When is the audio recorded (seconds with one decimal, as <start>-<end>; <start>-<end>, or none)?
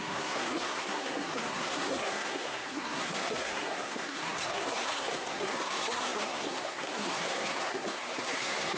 none